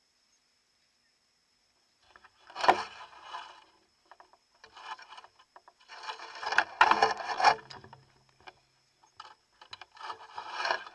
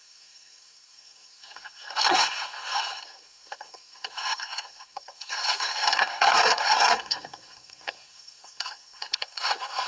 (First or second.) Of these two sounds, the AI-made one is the second